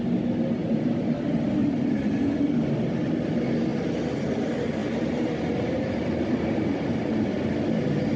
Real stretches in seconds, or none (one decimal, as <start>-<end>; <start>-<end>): 0.0-0.6; 1.1-1.6; 2.3-4.8; 7.3-8.2